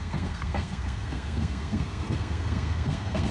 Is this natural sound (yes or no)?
no